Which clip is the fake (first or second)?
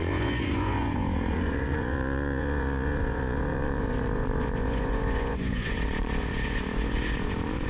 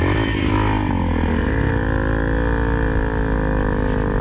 first